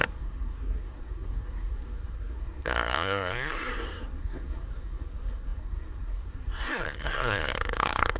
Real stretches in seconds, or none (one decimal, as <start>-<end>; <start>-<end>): none